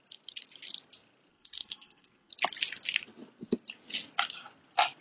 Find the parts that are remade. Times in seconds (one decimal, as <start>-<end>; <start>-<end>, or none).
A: 1.3-2.3